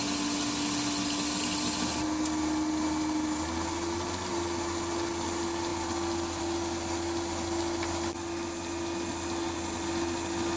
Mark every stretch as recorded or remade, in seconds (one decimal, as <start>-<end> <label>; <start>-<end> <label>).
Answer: 0.0-10.6 recorded